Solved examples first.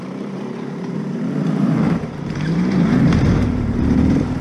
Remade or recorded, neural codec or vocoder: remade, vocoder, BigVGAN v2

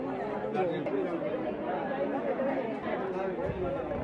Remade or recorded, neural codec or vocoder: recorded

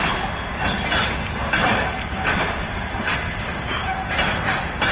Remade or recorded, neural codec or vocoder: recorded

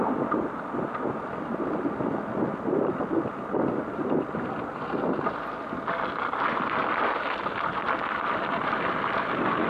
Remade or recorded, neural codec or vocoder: recorded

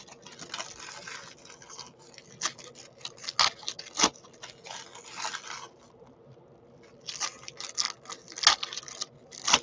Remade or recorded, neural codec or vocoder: recorded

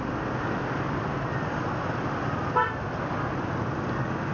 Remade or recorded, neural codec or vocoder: recorded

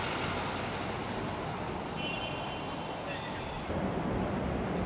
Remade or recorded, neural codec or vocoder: recorded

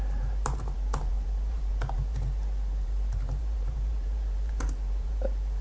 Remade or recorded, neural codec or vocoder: remade, vocoder, BigVGAN v2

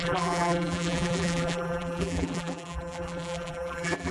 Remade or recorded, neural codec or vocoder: remade, vocoder, BigVGAN v2